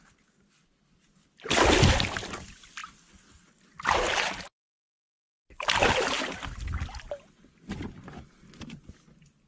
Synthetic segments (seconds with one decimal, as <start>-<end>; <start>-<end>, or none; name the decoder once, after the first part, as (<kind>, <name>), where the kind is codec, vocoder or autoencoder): none